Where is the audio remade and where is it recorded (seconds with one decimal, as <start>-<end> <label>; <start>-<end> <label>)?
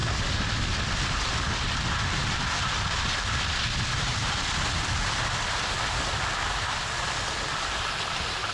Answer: 0.0-8.5 recorded